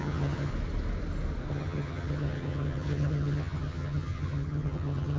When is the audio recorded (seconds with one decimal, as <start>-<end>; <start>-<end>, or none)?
0.5-1.5